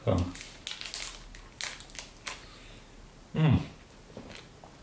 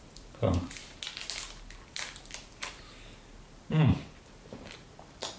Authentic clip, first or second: first